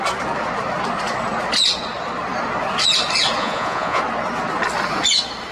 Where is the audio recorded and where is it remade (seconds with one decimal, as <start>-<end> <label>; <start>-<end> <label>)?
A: 0.0-3.4 recorded; 3.4-4.0 remade; 4.0-5.5 recorded